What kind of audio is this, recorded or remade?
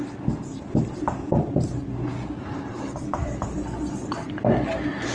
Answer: recorded